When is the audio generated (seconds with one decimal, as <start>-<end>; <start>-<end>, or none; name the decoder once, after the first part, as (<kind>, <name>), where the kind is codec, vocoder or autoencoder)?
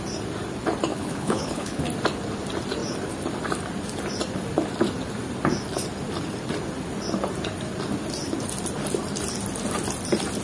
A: 0.9-1.8 (codec, HILCodec)